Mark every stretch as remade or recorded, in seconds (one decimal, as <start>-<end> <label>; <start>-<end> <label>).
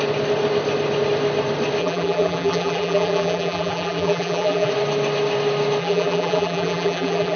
0.0-1.8 recorded; 1.8-4.7 remade; 4.7-5.8 recorded; 5.8-7.4 remade